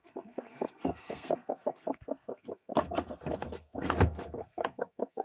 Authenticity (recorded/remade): remade